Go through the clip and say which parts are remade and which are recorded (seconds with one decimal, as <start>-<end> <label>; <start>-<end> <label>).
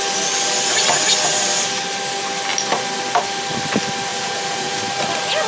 0.0-4.1 recorded; 4.1-4.8 remade; 4.8-5.5 recorded